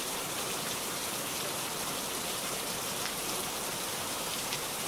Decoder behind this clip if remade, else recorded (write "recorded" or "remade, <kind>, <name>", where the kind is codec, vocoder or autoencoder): remade, vocoder, BigVGAN v2